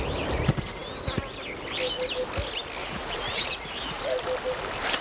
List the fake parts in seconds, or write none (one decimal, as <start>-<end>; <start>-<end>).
2.8-4.0